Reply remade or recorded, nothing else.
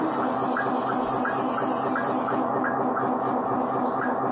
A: recorded